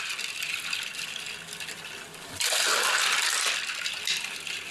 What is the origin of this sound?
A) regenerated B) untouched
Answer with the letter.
B